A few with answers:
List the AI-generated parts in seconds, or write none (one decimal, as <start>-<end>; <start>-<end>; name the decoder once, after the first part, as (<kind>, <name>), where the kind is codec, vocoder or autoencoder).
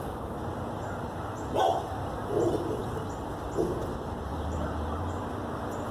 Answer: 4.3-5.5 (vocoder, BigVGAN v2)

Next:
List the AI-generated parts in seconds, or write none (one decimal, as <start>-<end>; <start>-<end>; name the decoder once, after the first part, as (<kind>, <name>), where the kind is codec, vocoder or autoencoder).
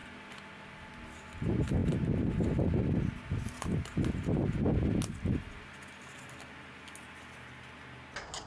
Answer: none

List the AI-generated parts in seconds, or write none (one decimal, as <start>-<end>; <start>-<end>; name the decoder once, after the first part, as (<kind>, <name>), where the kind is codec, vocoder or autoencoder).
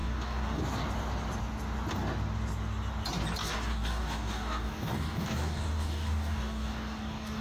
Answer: 0.0-0.6 (codec, DAC); 3.4-7.4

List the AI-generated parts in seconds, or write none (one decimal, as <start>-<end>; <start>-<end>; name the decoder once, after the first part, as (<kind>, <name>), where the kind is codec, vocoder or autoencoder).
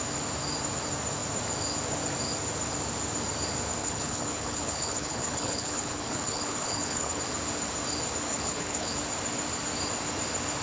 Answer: 3.8-7.2 (codec, HILCodec); 8.3-8.9